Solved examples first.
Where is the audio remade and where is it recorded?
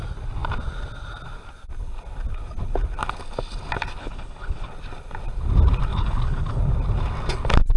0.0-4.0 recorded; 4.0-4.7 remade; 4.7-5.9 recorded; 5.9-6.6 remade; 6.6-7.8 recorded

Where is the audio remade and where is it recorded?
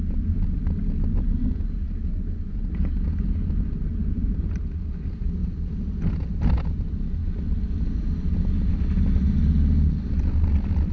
0.0-10.9 recorded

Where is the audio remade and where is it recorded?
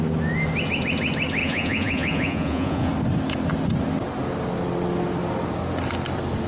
0.0-1.4 recorded; 1.4-2.9 remade; 2.9-6.5 recorded